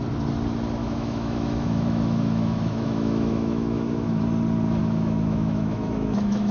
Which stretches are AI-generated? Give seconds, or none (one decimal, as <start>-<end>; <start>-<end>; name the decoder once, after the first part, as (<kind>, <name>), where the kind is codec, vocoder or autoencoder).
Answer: 0.8-4.2 (autoencoder, DAC-VAE); 4.8-6.5